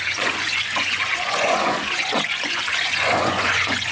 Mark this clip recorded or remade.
remade